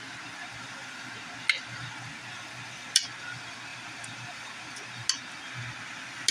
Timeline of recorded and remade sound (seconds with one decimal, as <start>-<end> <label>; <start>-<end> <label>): 0.0-3.7 recorded; 3.7-4.7 remade; 4.7-6.3 recorded